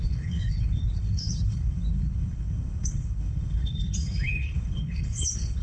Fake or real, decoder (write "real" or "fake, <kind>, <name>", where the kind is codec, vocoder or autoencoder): fake, codec, HILCodec